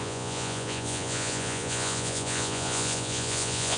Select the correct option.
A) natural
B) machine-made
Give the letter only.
B